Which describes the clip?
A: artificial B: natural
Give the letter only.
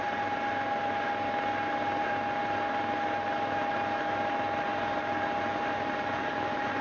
B